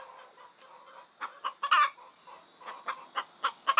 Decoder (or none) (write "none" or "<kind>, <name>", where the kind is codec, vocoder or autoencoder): none